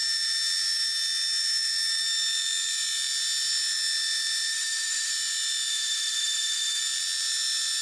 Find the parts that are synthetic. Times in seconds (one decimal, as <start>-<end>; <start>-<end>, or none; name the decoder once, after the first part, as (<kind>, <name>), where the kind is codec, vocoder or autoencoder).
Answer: 4.5-5.1 (autoencoder, DAC-VAE); 5.7-6.8

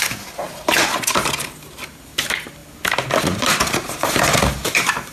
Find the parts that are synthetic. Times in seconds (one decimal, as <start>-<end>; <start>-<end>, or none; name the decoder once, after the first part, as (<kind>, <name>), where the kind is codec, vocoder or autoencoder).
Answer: 0.0-2.6 (vocoder, BigVGAN v2); 3.2-5.1

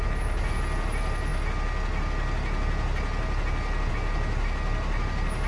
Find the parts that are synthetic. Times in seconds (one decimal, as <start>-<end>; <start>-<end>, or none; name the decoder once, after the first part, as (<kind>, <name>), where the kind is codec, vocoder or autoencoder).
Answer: none

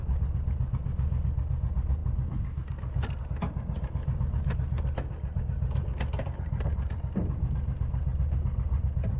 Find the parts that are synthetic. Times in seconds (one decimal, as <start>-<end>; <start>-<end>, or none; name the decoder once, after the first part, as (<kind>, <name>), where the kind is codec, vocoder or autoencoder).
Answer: none

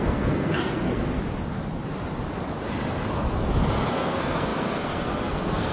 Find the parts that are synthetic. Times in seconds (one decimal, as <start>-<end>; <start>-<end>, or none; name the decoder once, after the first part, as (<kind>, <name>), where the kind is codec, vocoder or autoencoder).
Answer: 0.0-1.2 (codec, SNAC); 3.9-5.7

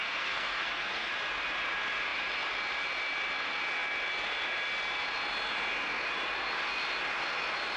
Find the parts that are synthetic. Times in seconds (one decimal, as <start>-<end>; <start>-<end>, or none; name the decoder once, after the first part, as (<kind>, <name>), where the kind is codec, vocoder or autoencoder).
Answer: 0.0-1.1 (codec, SNAC)